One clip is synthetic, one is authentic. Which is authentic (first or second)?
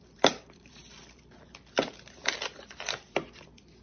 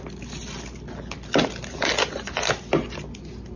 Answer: second